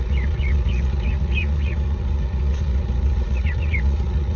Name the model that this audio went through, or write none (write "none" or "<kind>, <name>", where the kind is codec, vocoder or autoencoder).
vocoder, Vocos